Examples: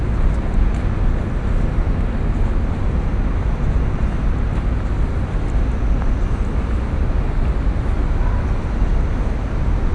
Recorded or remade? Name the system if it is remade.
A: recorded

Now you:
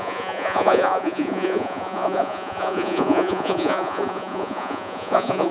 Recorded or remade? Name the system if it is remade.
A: remade, vocoder, Vocos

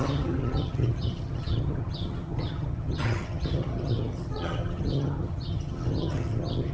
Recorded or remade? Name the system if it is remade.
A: remade, vocoder, HiFi-GAN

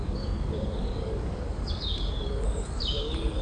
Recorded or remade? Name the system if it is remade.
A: remade, codec, DAC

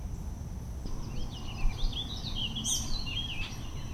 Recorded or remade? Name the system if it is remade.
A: recorded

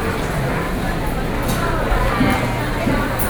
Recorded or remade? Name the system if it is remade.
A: recorded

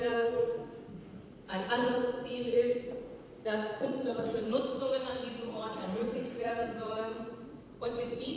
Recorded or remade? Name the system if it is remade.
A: remade, vocoder, Vocos